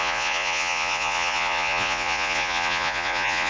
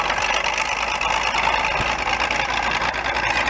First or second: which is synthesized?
first